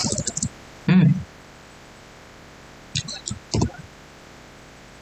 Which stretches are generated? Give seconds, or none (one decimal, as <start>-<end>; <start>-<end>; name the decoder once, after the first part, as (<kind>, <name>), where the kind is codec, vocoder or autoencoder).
none